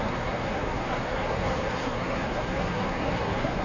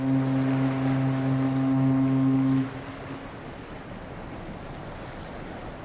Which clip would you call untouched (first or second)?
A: second